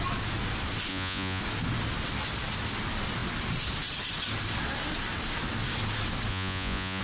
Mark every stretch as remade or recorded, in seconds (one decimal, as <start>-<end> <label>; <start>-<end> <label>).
0.0-0.9 recorded; 0.9-1.4 remade; 1.4-6.3 recorded; 6.3-7.0 remade